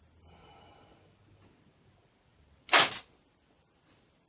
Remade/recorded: recorded